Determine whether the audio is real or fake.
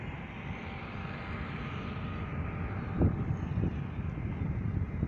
real